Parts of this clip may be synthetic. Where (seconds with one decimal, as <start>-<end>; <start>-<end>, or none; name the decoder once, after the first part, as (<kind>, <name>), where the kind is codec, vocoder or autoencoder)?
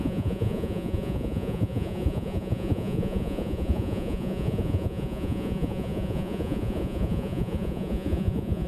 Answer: 0.0-8.7 (vocoder, Vocos)